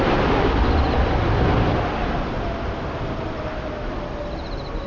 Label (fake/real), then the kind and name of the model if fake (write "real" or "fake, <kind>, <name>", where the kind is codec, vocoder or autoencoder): real